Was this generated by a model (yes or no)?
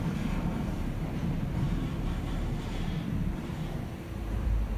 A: yes